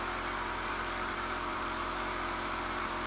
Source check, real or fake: fake